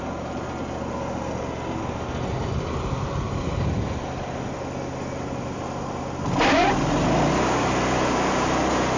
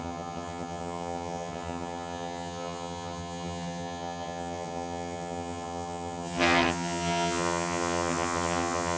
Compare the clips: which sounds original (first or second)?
first